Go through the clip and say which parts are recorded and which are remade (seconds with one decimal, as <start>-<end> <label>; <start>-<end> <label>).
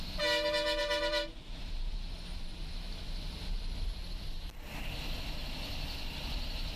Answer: 0.0-0.8 recorded; 0.8-1.9 remade; 1.9-6.8 recorded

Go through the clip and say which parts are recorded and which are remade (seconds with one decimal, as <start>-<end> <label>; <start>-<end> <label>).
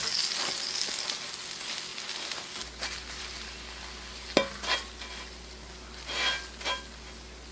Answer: 0.0-7.5 recorded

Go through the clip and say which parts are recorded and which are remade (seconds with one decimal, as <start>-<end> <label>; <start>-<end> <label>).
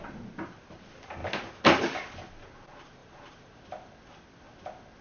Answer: 0.0-3.0 recorded; 3.0-4.1 remade; 4.1-5.0 recorded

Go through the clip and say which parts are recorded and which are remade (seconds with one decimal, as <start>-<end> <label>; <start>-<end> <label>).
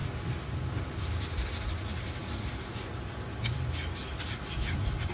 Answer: 0.0-5.1 recorded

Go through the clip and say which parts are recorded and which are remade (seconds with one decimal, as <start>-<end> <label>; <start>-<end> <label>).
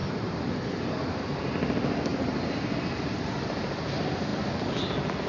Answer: 0.0-2.1 remade; 2.1-2.9 recorded; 2.9-4.3 remade; 4.3-5.3 recorded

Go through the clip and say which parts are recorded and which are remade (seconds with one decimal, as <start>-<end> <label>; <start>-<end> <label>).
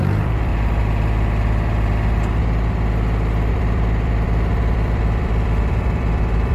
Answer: 0.0-0.5 remade; 0.5-3.5 recorded; 3.5-6.5 remade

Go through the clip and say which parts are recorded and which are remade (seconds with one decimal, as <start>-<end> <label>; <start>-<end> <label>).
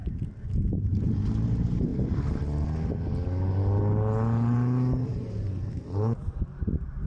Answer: 0.0-1.9 remade; 1.9-5.0 recorded; 5.0-7.1 remade